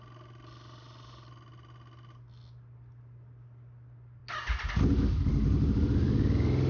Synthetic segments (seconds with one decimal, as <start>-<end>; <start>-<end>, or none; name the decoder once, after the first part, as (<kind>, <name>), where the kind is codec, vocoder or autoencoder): none